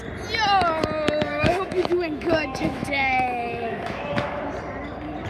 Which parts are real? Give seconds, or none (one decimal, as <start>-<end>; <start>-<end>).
0.0-1.3; 4.5-5.3